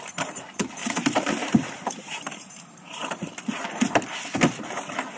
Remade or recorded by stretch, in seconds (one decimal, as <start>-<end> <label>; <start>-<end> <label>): 0.0-0.8 recorded; 0.8-3.4 remade; 3.4-5.2 recorded